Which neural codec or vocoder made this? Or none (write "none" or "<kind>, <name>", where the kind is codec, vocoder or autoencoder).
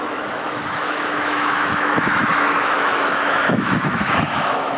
autoencoder, DAC-VAE